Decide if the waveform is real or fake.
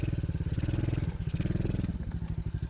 real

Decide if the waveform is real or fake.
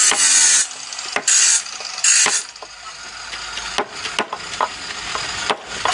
real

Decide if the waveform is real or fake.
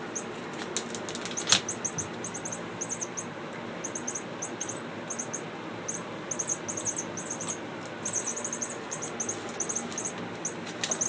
real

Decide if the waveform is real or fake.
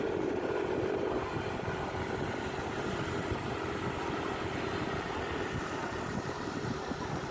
fake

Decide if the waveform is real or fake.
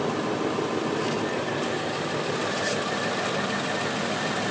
real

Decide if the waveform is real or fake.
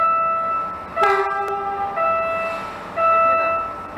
real